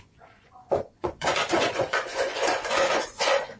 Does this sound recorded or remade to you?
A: remade